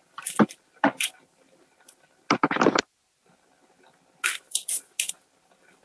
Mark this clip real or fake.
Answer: real